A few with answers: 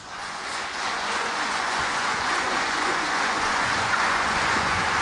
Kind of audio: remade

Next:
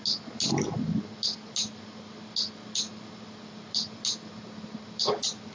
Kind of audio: recorded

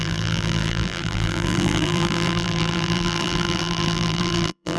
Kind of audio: remade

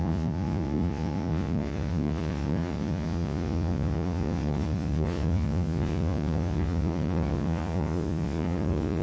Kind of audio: remade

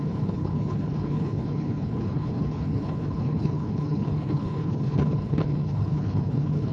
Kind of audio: remade